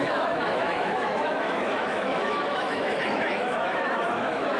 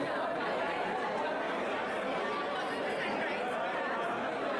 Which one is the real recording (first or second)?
second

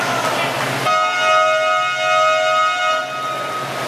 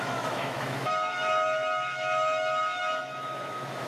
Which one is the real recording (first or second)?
first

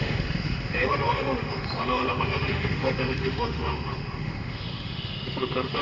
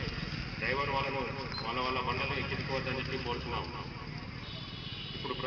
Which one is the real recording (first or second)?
second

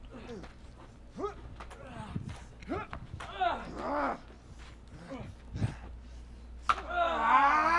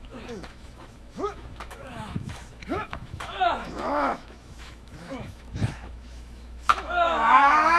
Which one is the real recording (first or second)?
first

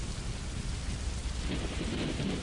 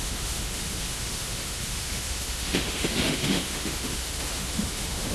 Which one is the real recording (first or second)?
first